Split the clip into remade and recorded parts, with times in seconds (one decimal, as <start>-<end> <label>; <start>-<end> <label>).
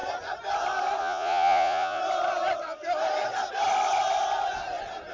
0.0-1.0 recorded; 1.0-2.0 remade; 2.0-5.1 recorded